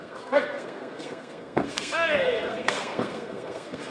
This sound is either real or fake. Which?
fake